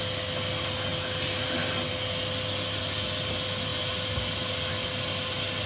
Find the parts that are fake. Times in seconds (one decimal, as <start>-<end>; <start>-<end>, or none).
none